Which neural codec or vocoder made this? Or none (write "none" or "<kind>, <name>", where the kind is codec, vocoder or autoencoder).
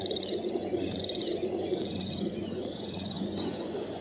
vocoder, Vocos